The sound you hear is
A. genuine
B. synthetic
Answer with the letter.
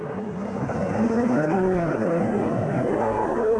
B